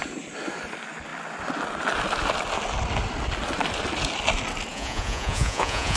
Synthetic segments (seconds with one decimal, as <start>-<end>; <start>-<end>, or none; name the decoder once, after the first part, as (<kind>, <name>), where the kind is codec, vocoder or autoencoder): 4.7-6.0 (vocoder, Vocos)